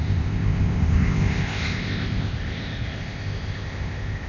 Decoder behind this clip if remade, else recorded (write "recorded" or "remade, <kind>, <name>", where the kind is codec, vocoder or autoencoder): remade, codec, ZipCodec